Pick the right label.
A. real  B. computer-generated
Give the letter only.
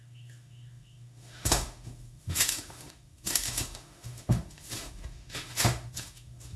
B